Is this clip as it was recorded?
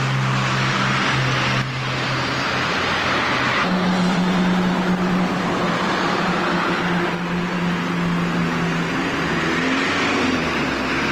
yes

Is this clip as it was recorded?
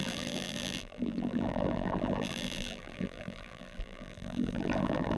no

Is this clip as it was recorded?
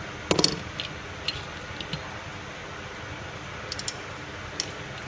yes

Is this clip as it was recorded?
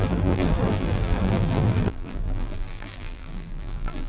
no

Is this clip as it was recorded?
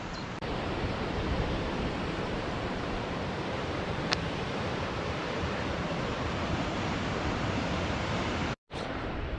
no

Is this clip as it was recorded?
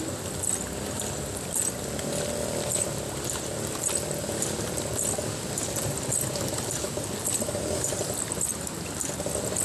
yes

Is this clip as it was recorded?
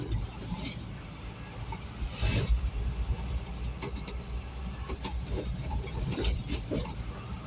no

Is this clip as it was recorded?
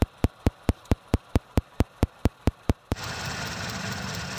no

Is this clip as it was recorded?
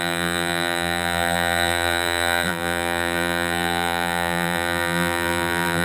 no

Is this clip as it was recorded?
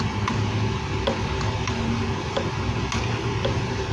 yes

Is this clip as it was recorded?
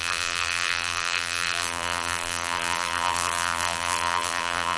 no